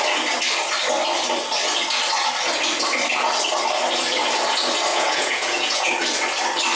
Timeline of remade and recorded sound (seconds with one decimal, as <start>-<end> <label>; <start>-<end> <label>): 0.0-4.9 recorded; 4.9-5.9 remade; 5.9-6.8 recorded